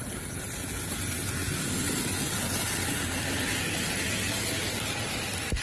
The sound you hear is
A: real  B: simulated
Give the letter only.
A